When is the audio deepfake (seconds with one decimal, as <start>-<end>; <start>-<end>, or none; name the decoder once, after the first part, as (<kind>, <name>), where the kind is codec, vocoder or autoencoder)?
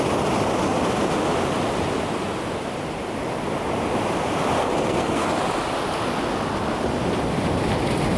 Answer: 4.6-5.4 (codec, SNAC)